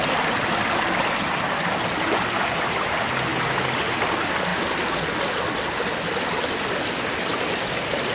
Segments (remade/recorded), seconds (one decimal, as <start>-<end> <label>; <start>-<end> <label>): 0.0-8.1 recorded